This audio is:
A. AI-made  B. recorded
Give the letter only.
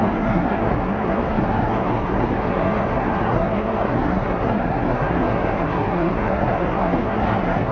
A